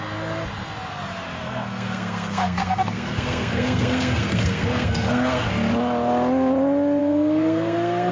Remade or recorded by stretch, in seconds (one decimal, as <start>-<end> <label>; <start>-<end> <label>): 0.0-1.4 recorded; 1.4-5.5 remade; 5.5-7.0 recorded; 7.0-8.1 remade